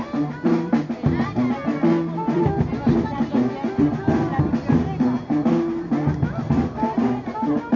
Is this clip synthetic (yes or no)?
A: no